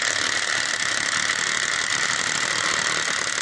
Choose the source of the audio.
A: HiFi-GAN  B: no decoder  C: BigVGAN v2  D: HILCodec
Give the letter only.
B